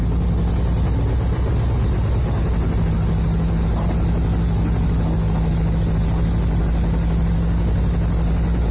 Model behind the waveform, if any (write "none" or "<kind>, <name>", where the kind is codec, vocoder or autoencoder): none